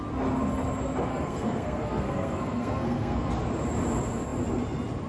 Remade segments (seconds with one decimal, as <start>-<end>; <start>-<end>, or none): 1.1-3.3